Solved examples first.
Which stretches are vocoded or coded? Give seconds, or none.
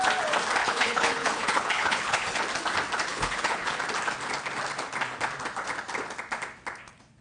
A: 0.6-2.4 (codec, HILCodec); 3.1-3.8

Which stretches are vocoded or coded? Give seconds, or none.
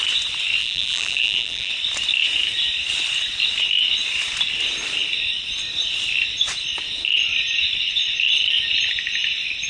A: 0.6-1.7 (vocoder, BigVGAN v2)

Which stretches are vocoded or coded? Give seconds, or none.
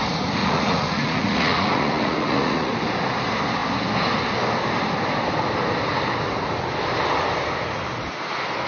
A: 0.4-2.7 (vocoder, Vocos)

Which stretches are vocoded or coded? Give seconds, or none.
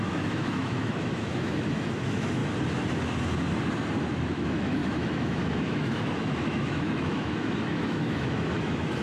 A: 0.0-2.4 (autoencoder, DAC-VAE); 4.1-9.0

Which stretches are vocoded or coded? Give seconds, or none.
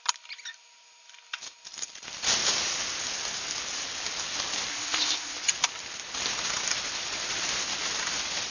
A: 4.7-5.4 (codec, ZipCodec)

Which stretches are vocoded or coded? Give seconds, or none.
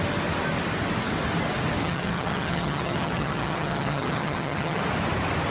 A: 1.8-4.8 (vocoder, HiFi-GAN)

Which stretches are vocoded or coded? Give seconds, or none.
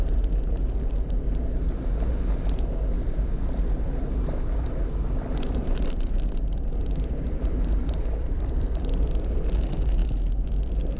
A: 8.2-9.5 (vocoder, BigVGAN v2)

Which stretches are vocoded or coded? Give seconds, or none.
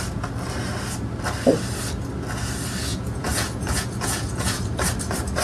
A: 2.9-4.6 (vocoder, Vocos)